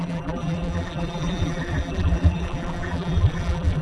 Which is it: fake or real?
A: fake